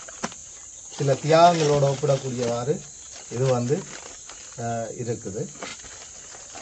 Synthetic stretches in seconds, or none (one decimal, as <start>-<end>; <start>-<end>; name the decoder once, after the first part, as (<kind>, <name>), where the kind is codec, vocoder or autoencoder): none